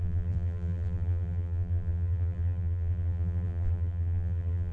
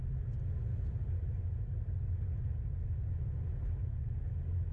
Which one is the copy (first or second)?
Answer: first